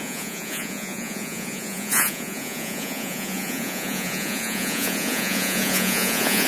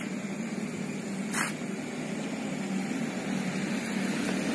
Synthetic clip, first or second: first